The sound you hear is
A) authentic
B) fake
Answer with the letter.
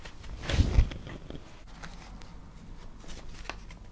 A